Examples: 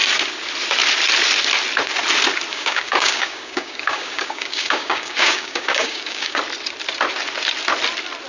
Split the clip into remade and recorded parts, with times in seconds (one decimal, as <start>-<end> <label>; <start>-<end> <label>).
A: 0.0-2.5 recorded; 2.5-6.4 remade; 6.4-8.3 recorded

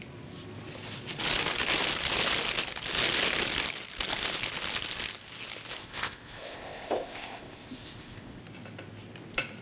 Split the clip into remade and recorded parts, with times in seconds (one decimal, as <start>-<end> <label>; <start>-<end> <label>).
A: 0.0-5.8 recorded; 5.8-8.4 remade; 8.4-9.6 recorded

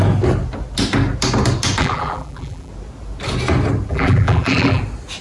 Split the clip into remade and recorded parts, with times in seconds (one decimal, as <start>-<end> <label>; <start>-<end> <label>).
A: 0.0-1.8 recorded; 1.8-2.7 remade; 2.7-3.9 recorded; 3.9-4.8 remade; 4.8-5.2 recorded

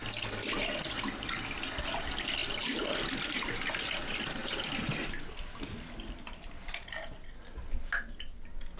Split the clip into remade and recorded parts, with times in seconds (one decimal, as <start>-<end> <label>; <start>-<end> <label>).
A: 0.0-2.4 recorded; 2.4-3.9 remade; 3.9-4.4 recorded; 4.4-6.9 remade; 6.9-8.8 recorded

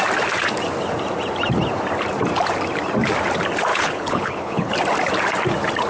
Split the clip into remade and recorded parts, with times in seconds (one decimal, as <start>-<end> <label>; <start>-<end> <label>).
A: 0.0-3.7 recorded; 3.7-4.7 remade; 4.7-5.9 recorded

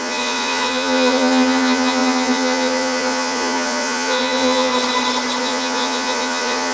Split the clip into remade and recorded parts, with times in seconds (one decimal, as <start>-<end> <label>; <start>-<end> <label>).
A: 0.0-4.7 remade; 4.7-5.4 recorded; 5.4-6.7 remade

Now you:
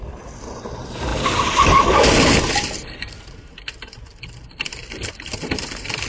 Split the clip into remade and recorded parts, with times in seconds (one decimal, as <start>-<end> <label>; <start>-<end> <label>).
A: 0.0-6.1 remade